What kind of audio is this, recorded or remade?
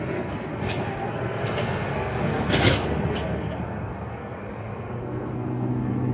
remade